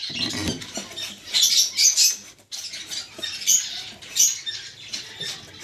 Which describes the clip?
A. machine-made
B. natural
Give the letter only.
B